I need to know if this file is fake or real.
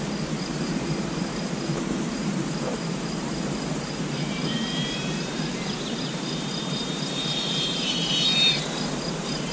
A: fake